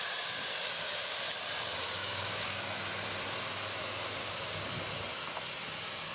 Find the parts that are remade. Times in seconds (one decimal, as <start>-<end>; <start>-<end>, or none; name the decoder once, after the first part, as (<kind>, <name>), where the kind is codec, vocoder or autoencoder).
2.0-2.7 (codec, DAC); 4.2-4.7